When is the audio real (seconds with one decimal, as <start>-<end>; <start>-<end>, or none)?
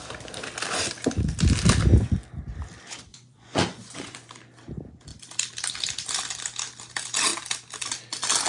0.0-3.1; 4.3-8.5